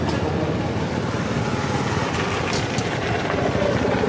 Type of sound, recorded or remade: recorded